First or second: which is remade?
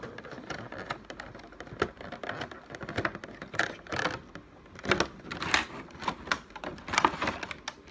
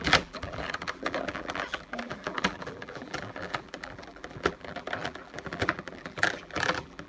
second